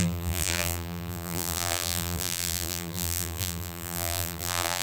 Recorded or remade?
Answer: remade